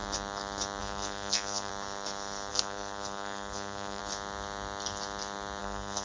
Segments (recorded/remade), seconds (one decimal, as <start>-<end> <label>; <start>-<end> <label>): 0.0-0.8 recorded; 0.8-1.7 remade; 1.7-2.5 recorded; 2.5-4.0 remade; 4.0-5.6 recorded; 5.6-6.0 remade